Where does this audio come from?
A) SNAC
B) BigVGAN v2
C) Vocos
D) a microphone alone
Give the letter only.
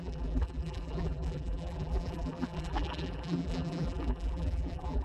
B